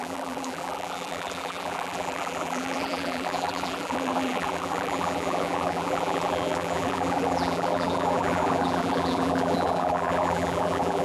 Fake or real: fake